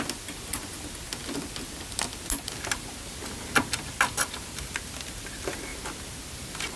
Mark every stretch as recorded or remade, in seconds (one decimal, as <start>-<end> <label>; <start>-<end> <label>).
0.0-6.8 recorded